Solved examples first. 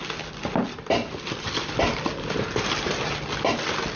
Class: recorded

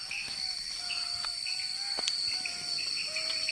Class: recorded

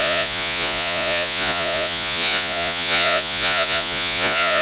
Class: remade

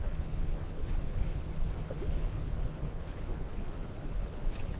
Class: remade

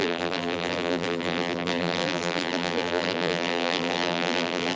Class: remade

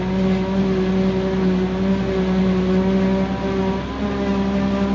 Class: recorded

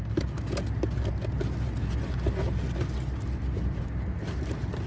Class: recorded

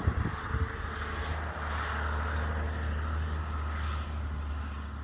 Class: recorded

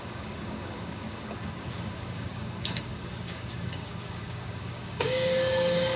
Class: remade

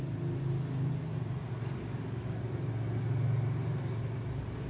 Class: recorded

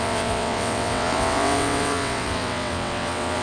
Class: remade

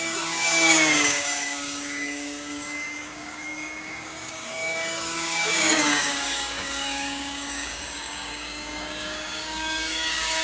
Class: remade